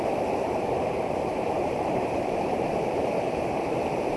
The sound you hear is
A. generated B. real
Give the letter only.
A